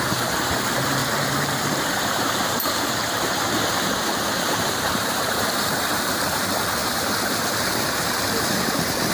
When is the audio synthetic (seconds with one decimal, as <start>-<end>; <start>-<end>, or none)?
0.0-9.1